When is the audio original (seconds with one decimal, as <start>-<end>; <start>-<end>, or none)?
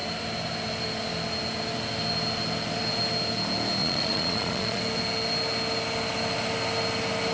0.0-3.8; 4.8-7.3